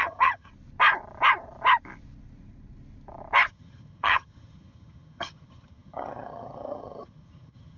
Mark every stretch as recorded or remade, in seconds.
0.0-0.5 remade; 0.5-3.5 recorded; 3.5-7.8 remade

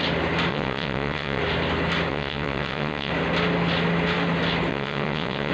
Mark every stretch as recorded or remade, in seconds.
0.0-0.5 recorded; 0.5-1.4 remade; 1.4-2.1 recorded; 2.1-3.1 remade; 3.1-4.7 recorded; 4.7-5.5 remade

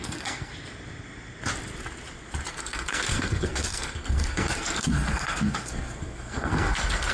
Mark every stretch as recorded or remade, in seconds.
0.0-0.5 remade; 0.5-2.5 recorded; 2.5-7.1 remade

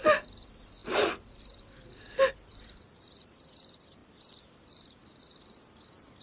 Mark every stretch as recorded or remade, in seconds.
0.0-6.2 recorded

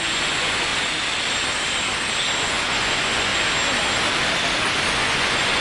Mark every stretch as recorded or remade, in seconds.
0.0-0.7 remade; 0.7-2.4 recorded; 2.4-3.3 remade; 3.3-4.9 recorded; 4.9-5.6 remade

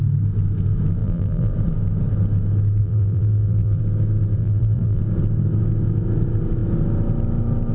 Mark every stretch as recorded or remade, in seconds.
0.0-1.0 recorded; 1.0-1.5 remade; 1.5-2.8 recorded; 2.8-3.8 remade; 3.8-4.4 recorded; 4.4-5.0 remade; 5.0-7.7 recorded

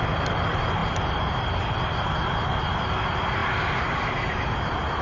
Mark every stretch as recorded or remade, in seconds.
0.0-5.0 recorded

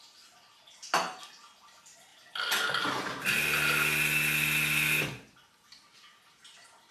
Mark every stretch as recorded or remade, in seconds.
0.0-6.9 recorded